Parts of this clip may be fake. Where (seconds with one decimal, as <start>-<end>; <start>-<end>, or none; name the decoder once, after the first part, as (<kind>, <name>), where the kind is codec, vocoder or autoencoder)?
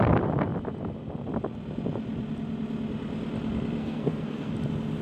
3.8-4.5 (codec, SNAC)